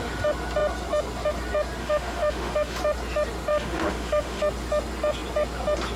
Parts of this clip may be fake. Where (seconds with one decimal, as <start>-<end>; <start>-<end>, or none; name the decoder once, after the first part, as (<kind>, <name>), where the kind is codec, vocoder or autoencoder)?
1.8-2.8 (autoencoder, DAC-VAE); 3.5-4.4